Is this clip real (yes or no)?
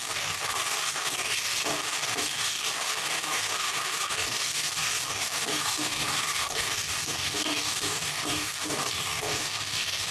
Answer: no